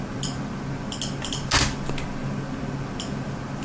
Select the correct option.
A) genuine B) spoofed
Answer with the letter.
A